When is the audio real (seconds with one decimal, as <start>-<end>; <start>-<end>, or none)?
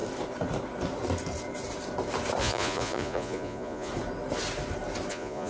0.0-2.4; 3.9-5.1